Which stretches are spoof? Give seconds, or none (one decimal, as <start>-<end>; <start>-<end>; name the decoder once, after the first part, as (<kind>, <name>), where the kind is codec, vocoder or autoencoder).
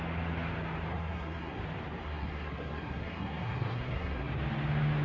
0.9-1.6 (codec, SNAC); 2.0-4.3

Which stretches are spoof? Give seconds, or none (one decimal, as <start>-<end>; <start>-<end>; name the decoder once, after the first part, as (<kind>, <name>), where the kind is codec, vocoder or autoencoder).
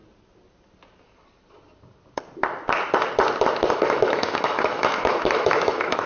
3.7-6.1 (autoencoder, DAC-VAE)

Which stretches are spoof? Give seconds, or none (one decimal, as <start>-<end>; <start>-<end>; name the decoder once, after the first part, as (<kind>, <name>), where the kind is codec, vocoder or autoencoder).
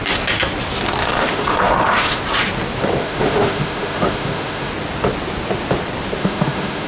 1.0-2.2 (autoencoder, DAC-VAE); 3.0-4.7; 6.2-6.9